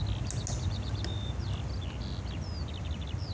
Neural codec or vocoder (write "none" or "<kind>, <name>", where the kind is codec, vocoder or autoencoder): none